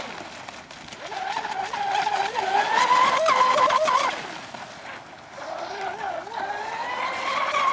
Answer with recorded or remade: recorded